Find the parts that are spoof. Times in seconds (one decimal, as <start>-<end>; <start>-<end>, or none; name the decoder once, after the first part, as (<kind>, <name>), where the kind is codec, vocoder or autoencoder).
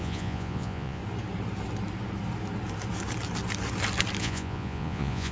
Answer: 0.0-1.0 (vocoder, Vocos); 4.2-5.3